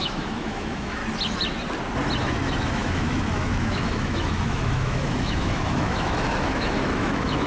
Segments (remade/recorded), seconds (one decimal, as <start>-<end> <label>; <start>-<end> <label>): 0.0-1.0 remade; 1.0-2.2 recorded; 2.2-7.5 remade